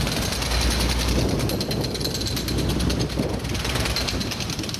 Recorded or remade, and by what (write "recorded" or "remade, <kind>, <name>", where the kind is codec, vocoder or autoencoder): recorded